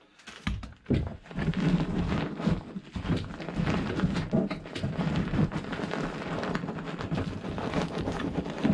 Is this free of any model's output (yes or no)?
no